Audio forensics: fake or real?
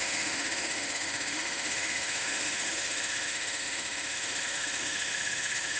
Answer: fake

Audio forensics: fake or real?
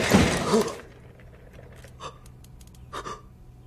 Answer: real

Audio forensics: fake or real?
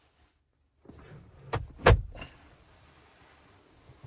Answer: real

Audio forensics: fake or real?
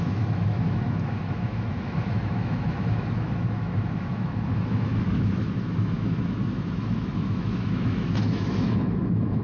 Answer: fake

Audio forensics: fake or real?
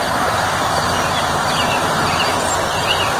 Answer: real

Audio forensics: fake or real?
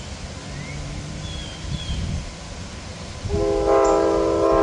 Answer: real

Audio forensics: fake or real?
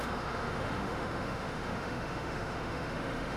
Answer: fake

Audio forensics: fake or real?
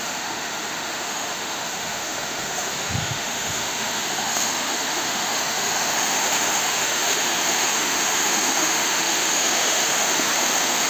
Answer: fake